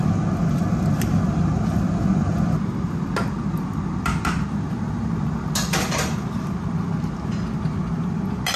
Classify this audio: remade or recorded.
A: recorded